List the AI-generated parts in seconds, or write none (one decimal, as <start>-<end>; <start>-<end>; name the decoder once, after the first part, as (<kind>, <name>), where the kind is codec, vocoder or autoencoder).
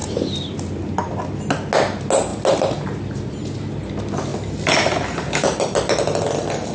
none